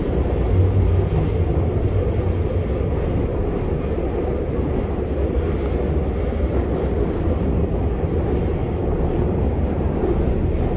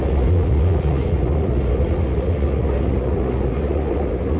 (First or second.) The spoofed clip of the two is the second